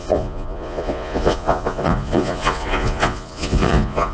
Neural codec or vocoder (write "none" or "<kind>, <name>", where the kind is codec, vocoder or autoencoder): vocoder, Vocos